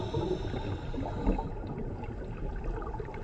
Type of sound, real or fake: real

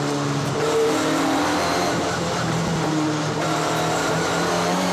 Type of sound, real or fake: fake